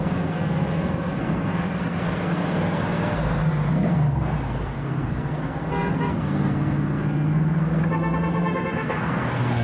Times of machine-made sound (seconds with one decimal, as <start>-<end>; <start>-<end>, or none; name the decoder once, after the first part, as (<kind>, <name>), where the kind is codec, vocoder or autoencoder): 0.0-9.6 (codec, SNAC)